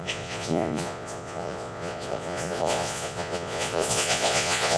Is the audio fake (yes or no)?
yes